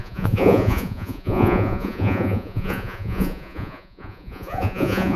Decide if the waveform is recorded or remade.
remade